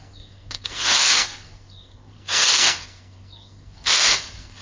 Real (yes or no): no